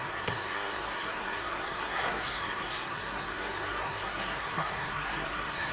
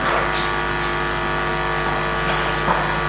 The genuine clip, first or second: second